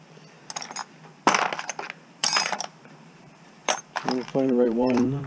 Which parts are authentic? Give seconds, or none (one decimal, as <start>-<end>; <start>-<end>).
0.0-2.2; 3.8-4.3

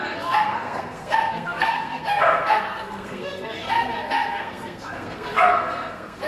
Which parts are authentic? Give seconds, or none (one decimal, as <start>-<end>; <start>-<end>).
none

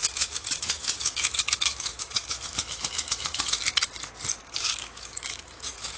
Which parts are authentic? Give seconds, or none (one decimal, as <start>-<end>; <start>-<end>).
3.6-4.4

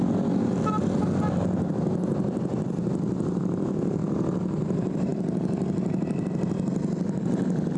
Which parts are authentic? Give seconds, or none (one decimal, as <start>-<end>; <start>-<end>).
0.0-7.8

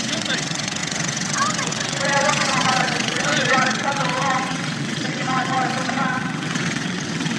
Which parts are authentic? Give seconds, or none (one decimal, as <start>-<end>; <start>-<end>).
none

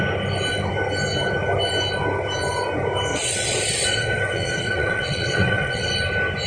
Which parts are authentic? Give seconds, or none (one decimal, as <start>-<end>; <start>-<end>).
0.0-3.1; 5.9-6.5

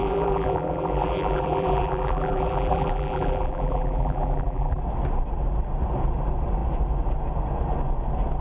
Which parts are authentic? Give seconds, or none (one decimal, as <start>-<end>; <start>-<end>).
4.8-8.4